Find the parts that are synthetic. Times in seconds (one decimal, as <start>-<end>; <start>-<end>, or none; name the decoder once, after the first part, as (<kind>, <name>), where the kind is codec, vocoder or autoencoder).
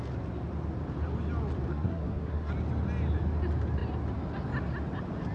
1.7-2.5 (codec, SNAC)